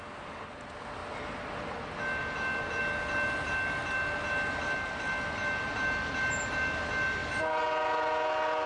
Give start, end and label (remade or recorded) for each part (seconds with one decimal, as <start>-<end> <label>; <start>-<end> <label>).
0.0-8.7 recorded